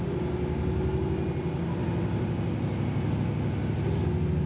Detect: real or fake real